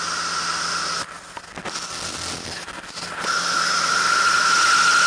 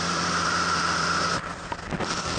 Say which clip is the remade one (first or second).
second